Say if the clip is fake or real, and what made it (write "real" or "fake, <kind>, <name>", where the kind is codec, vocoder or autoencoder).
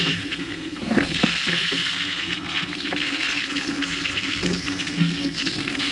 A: fake, codec, SNAC